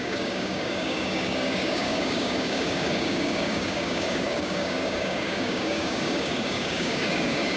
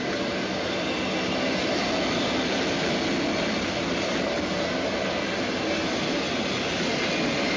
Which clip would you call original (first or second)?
second